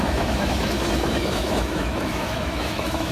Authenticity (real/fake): fake